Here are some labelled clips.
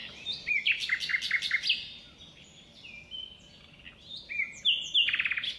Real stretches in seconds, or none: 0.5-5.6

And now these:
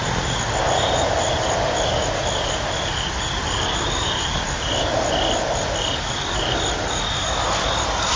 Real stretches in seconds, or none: 0.0-8.2

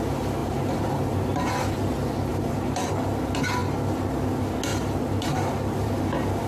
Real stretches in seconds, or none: 0.0-0.4; 1.5-2.3; 2.9-4.7; 6.0-6.5